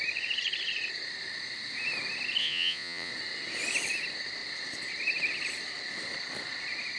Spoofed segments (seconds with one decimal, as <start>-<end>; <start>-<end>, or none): 2.4-3.1

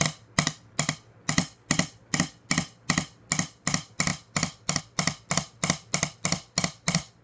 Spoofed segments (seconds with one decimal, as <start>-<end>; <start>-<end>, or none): none

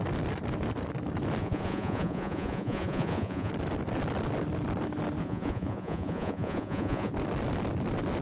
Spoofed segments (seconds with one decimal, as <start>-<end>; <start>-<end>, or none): 1.4-3.5; 5.2-7.1

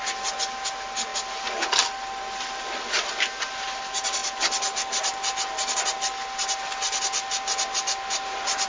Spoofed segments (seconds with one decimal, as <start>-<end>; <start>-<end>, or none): 1.1-3.8